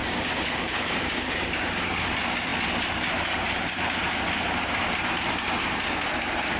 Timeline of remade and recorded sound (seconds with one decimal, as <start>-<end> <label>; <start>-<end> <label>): 0.0-2.0 remade; 2.0-6.6 recorded